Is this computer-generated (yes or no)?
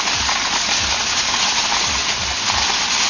no